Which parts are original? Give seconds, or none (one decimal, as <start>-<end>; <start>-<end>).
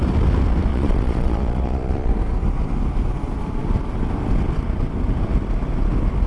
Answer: 0.0-0.7; 2.1-6.3